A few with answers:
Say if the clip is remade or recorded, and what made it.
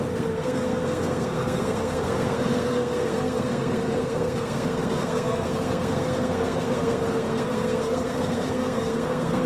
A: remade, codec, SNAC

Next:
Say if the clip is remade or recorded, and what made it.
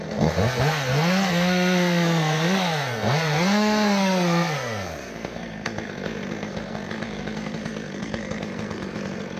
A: remade, codec, SNAC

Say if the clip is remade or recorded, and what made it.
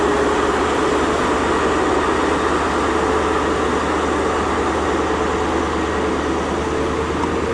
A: recorded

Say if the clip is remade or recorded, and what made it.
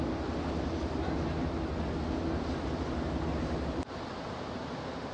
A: recorded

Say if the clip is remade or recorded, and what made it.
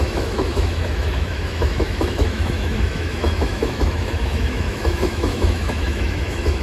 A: remade, autoencoder, DAC-VAE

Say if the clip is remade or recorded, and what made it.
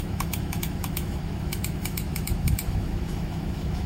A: remade, autoencoder, DAC-VAE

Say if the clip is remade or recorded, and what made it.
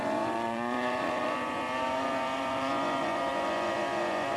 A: remade, vocoder, Vocos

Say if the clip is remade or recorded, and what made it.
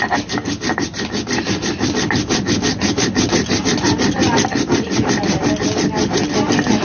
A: recorded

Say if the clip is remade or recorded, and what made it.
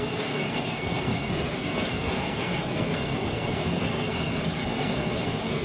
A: remade, codec, SNAC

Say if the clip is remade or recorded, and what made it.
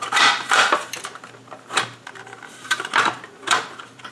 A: remade, vocoder, BigVGAN v2